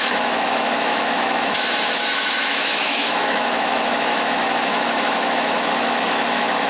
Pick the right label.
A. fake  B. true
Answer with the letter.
A